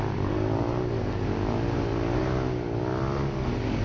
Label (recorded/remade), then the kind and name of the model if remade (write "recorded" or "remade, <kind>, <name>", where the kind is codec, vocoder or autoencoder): recorded